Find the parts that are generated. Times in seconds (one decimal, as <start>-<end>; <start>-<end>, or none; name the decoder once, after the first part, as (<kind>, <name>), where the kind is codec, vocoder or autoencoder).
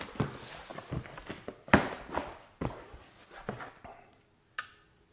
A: none